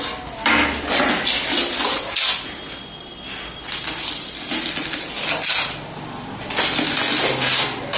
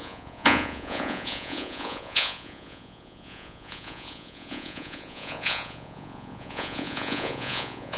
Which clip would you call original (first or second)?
first